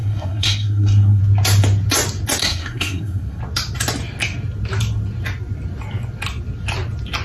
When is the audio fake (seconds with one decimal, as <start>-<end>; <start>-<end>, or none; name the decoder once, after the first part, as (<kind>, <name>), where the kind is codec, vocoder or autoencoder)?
0.0-1.2 (codec, SNAC); 2.4-3.4